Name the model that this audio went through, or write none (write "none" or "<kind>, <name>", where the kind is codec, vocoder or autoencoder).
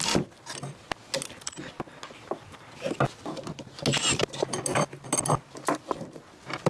none